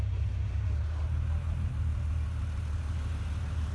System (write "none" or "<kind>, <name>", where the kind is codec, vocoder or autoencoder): none